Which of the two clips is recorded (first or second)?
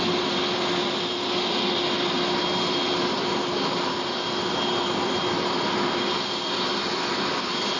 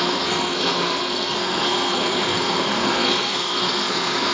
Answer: first